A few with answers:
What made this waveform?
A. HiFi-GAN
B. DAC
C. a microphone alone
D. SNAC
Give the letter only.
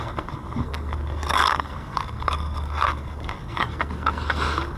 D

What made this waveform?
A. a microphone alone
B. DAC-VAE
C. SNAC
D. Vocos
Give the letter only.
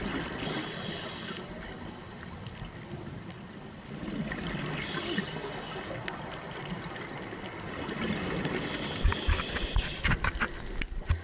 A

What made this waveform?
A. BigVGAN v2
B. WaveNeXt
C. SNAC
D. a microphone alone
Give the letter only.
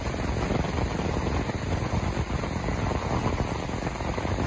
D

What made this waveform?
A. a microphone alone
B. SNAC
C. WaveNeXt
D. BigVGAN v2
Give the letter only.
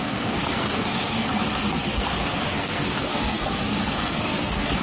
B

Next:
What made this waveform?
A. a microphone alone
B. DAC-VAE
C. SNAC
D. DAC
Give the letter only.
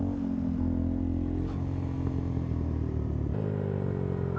A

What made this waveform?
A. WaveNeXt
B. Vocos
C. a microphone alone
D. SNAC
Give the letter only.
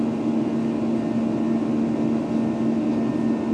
C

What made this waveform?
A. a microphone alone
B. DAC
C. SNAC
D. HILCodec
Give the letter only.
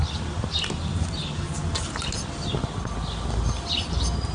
A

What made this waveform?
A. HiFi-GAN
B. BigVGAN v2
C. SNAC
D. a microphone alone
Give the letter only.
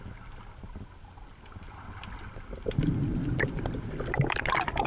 D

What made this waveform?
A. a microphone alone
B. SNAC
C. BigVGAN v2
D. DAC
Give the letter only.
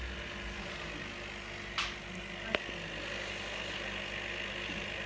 A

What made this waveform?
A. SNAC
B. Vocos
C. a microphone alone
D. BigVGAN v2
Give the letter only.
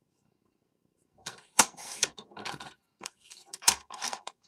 A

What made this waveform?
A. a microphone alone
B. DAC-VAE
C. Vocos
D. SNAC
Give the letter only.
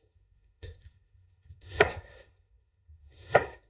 D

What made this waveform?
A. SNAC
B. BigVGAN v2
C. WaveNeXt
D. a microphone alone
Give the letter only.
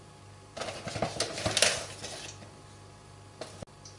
D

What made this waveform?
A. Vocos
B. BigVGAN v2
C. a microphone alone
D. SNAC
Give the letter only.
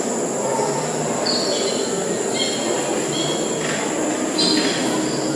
C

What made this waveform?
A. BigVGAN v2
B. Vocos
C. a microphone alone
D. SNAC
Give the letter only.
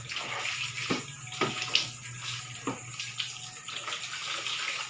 C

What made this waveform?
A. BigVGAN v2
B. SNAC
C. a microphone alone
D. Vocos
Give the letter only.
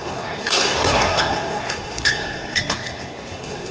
B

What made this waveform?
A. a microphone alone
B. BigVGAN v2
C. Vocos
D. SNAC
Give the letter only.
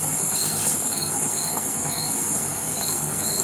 D